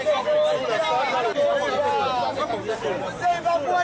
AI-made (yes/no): no